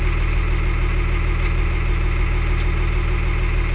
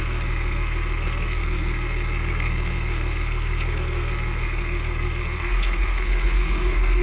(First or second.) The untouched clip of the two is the first